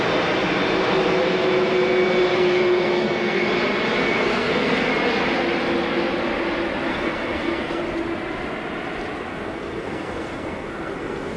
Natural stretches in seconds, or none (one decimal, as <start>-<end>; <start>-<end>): 0.0-2.3; 3.5-4.0; 4.9-6.9; 7.8-9.3